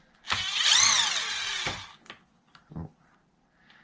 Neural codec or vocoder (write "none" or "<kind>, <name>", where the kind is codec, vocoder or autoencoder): none